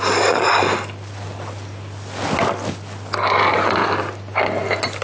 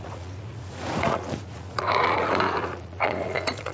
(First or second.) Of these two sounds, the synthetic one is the second